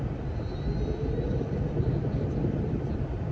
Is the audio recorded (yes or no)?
no